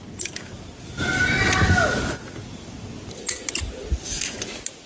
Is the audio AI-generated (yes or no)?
no